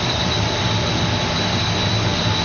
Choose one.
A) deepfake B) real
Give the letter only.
B